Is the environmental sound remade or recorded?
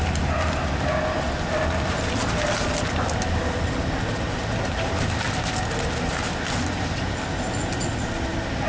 recorded